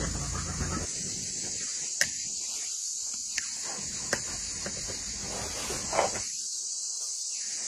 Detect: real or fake real